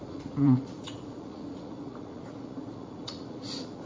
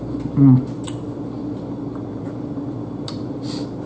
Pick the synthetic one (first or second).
first